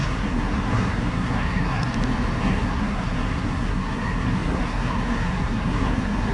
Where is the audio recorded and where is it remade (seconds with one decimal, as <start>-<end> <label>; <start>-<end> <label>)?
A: 0.0-1.9 remade; 1.9-2.4 recorded; 2.4-6.3 remade